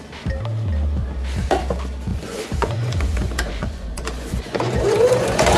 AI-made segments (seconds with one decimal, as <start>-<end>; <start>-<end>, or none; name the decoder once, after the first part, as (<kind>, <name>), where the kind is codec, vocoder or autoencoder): 2.1-5.6 (vocoder, Vocos)